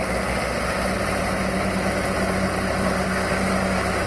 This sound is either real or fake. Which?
real